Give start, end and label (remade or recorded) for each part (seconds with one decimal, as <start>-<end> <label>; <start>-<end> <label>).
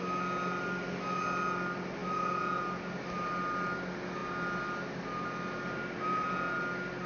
0.0-7.1 recorded